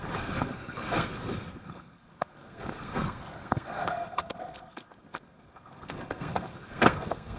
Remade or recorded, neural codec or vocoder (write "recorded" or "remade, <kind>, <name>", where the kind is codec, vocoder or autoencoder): remade, codec, SNAC